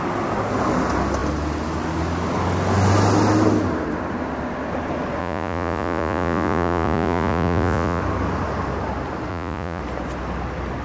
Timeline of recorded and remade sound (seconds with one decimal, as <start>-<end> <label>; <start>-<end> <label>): 0.0-5.2 recorded; 5.2-8.0 remade; 8.0-9.3 recorded; 9.3-9.8 remade; 9.8-10.8 recorded